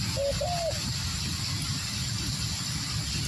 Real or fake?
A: real